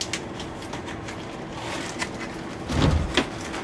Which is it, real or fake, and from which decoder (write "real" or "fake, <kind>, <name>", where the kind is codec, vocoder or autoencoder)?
real